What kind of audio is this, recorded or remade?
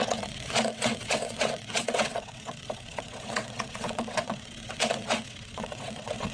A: remade